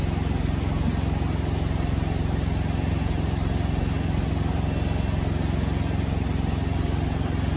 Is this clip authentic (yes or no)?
yes